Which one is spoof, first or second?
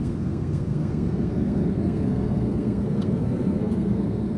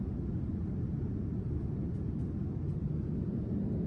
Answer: first